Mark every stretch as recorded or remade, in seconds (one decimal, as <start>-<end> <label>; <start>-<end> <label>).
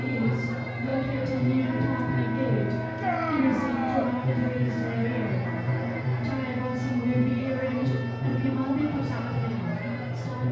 0.0-8.3 recorded; 8.3-9.5 remade; 9.5-10.5 recorded